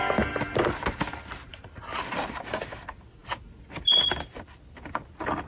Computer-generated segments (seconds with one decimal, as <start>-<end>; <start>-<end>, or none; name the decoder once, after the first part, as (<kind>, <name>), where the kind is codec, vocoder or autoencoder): none